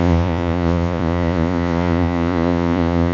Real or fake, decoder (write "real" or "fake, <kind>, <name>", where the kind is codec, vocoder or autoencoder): fake, vocoder, Vocos